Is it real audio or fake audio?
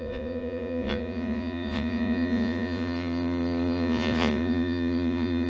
fake